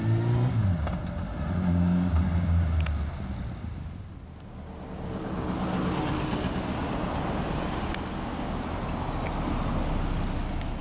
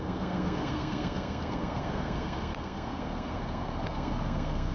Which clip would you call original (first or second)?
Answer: first